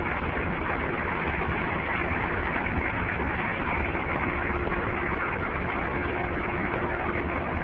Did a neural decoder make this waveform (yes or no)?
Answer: no